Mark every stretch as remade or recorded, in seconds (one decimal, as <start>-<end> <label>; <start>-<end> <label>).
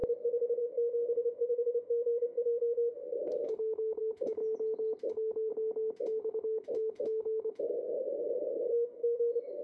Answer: 0.0-0.6 recorded; 0.6-4.4 remade; 4.4-5.1 recorded; 5.1-5.5 remade; 5.5-6.2 recorded; 6.2-9.6 remade